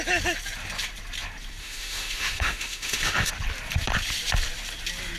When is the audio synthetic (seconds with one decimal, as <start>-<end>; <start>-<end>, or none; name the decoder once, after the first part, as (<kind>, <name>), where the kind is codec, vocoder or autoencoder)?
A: 1.6-3.3 (autoencoder, DAC-VAE)